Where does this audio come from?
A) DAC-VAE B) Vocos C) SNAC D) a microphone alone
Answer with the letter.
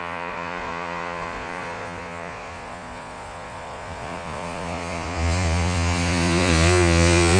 B